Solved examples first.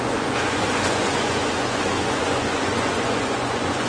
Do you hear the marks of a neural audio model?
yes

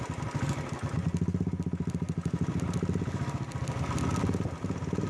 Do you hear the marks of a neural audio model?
no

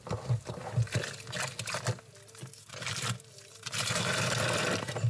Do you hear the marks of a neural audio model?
no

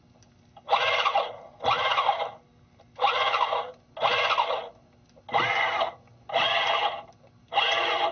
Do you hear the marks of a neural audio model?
no